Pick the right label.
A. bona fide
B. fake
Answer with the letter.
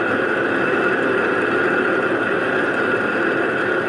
A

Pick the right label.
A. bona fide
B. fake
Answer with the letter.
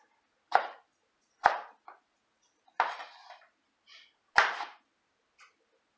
A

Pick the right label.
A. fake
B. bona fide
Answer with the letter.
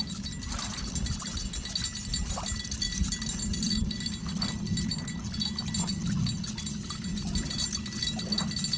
B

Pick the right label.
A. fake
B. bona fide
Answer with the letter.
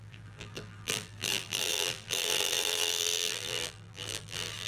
A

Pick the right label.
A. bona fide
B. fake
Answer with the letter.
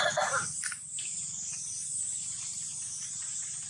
A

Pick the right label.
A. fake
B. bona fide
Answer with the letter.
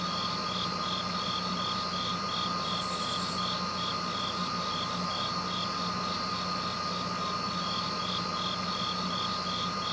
B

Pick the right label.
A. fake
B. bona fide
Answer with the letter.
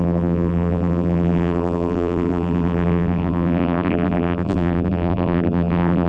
A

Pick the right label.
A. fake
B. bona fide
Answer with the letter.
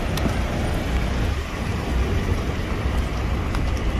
B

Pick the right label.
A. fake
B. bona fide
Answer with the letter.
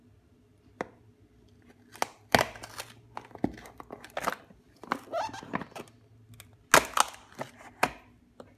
B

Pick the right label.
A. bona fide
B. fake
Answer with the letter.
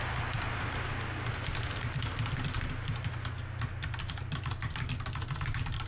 A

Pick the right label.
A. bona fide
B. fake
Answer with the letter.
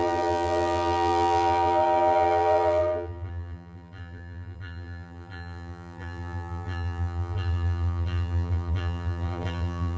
B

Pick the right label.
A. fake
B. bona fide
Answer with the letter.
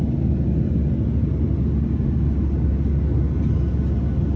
B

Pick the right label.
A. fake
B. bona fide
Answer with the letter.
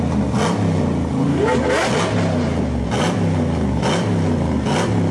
B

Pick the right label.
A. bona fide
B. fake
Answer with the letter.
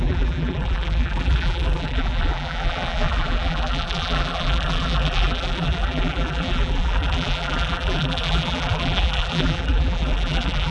B